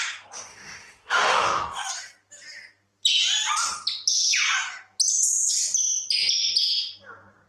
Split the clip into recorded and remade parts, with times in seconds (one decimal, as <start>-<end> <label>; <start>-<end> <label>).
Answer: 0.0-0.5 recorded; 0.5-1.9 remade; 1.9-7.5 recorded